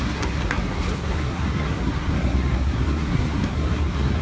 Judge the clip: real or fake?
fake